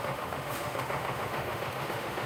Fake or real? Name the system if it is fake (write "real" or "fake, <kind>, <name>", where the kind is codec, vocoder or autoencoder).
fake, autoencoder, DAC-VAE